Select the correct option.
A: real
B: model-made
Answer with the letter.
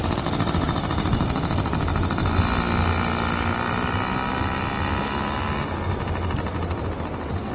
A